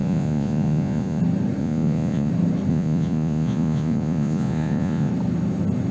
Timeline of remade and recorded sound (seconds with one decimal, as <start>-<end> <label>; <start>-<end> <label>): 0.0-1.2 remade; 1.2-1.6 recorded; 1.6-2.3 remade; 2.3-2.7 recorded; 2.7-5.1 remade; 5.1-5.9 recorded